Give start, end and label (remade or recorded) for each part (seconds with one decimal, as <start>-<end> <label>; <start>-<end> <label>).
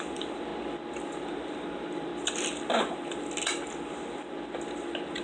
0.0-0.5 remade; 0.5-1.2 recorded; 1.2-2.1 remade; 2.1-5.2 recorded